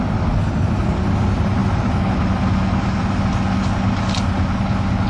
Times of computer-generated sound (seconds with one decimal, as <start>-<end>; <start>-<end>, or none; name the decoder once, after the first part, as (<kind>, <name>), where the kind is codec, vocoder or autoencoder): none